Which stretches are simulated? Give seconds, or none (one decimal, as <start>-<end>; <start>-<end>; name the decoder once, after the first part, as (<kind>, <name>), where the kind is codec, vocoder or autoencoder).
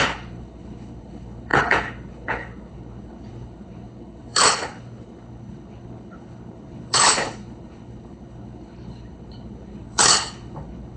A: 0.0-11.0 (codec, HILCodec)